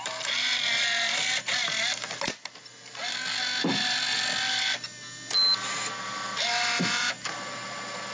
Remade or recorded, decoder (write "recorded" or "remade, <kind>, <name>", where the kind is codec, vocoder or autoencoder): recorded